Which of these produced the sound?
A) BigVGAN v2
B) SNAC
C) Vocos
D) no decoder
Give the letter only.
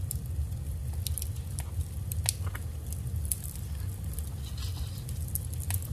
D